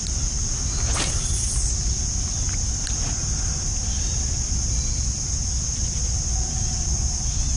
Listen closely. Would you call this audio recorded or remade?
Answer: recorded